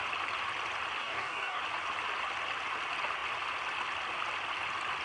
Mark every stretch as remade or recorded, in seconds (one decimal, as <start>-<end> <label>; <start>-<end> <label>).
0.0-1.0 recorded; 1.0-1.6 remade; 1.6-5.0 recorded